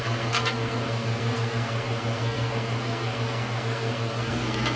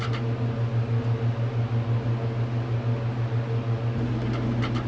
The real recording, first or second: second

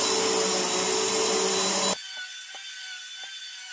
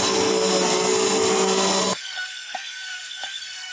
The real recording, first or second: first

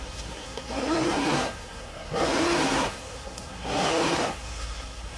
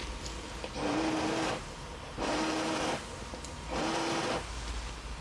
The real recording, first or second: second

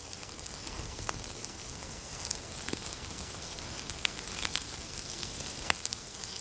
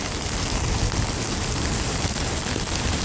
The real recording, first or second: second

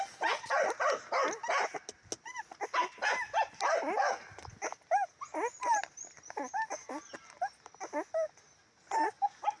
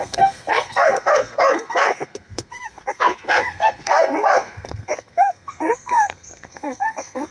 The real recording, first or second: first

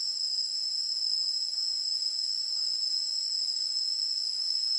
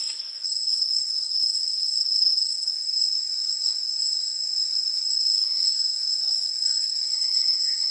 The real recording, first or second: first